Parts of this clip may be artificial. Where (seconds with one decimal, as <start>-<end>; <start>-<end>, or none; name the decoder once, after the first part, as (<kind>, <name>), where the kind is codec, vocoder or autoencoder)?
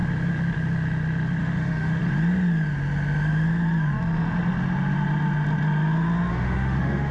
1.4-2.0 (autoencoder, DAC-VAE); 6.3-7.1